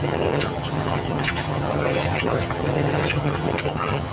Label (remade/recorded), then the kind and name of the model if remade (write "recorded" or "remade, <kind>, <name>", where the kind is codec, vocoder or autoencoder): remade, vocoder, HiFi-GAN